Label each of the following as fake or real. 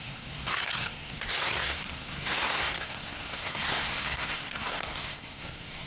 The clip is fake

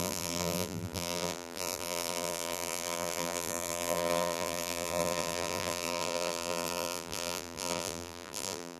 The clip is fake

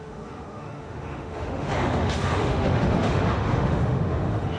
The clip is fake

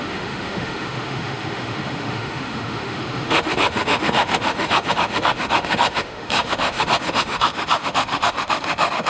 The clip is fake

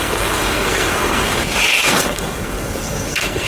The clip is fake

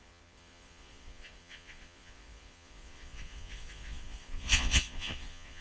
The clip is fake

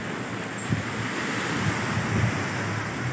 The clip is real